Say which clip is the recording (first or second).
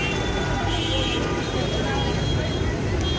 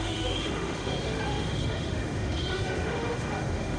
first